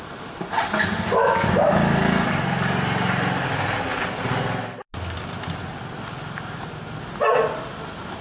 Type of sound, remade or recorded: recorded